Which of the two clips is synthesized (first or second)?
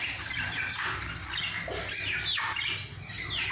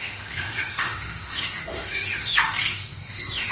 second